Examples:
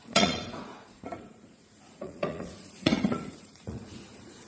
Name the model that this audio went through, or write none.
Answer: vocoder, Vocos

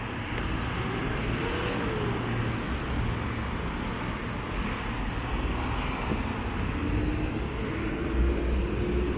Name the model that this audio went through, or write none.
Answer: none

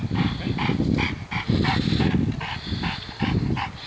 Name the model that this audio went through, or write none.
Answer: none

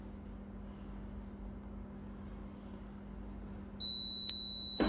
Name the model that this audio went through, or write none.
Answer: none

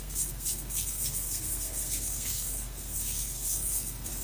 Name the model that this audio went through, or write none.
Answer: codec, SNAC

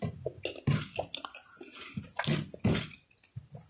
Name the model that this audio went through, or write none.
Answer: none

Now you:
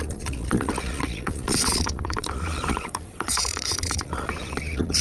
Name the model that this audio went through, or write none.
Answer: vocoder, Vocos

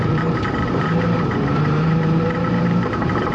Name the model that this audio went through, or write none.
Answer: vocoder, BigVGAN v2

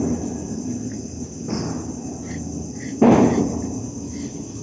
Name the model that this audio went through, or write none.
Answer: none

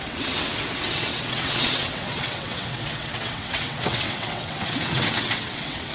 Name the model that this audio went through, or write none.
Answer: vocoder, WaveNeXt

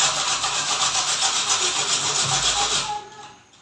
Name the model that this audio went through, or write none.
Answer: none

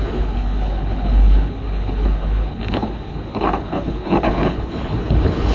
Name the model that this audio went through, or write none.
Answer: codec, HILCodec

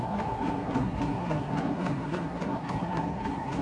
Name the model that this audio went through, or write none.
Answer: codec, SNAC